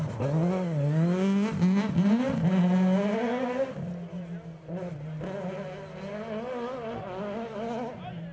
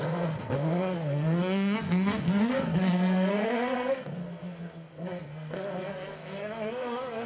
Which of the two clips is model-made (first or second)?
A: second